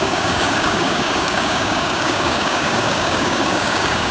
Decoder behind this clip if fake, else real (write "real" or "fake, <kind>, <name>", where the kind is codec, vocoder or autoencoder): fake, codec, DAC